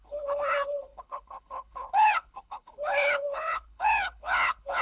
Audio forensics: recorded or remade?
remade